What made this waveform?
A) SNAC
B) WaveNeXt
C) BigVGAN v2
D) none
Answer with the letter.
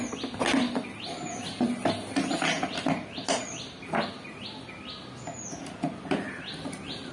D